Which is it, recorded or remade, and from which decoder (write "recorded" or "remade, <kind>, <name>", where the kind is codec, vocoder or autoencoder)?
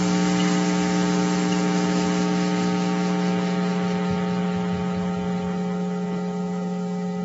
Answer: recorded